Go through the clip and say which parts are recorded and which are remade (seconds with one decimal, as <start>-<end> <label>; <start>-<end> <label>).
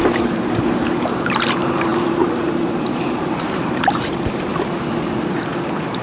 0.0-4.5 remade; 4.5-5.4 recorded; 5.4-6.0 remade